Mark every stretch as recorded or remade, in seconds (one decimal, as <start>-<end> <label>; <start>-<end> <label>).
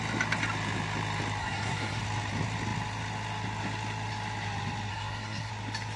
0.0-1.4 recorded; 1.4-2.0 remade; 2.0-4.9 recorded; 4.9-5.5 remade; 5.5-6.0 recorded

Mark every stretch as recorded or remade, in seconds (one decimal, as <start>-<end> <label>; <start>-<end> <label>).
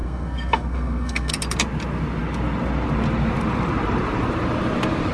0.0-1.3 remade; 1.3-5.1 recorded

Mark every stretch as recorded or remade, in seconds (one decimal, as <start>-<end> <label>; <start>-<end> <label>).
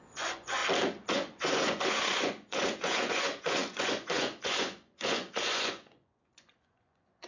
0.0-0.6 remade; 0.6-1.1 recorded; 1.1-7.3 remade